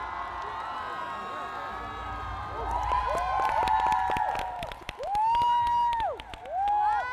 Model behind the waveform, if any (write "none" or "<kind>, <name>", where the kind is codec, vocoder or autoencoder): none